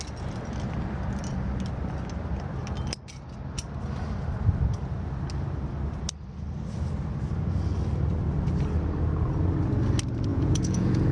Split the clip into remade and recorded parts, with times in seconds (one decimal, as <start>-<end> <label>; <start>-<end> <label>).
0.0-10.3 recorded; 10.3-11.1 remade